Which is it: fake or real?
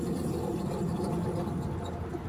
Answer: real